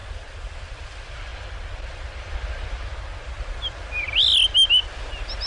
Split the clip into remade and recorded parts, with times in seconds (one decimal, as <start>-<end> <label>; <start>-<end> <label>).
0.0-5.5 recorded